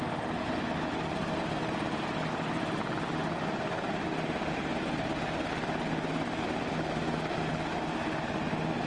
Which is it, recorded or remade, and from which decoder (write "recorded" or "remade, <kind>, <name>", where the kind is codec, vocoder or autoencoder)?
recorded